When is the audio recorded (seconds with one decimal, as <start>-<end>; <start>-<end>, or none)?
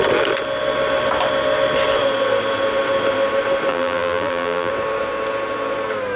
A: 0.0-3.7; 4.7-6.2